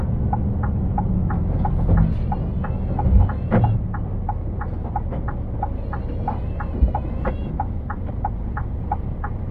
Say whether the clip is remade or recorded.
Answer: recorded